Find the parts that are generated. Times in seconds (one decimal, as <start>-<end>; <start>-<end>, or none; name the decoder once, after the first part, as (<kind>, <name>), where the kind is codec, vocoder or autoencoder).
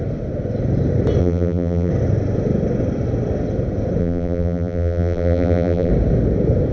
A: 1.2-1.9 (vocoder, BigVGAN v2); 4.0-5.9